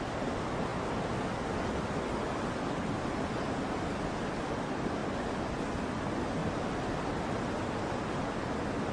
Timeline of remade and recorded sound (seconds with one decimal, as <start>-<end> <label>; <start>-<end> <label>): 0.0-5.0 recorded; 5.0-5.5 remade; 5.5-6.4 recorded; 6.4-7.4 remade; 7.4-8.9 recorded